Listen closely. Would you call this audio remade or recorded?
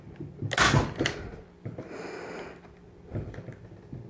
recorded